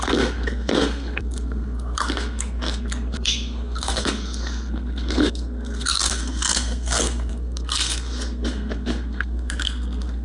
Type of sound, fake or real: fake